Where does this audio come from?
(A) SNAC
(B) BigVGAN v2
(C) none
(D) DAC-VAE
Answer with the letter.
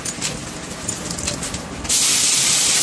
C